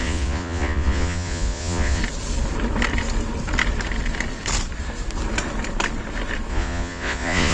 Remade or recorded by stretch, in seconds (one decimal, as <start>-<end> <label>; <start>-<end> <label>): 0.0-2.0 remade; 2.0-6.5 recorded; 6.5-7.5 remade